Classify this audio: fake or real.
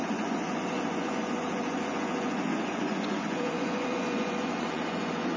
fake